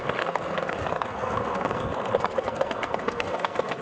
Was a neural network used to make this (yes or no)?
yes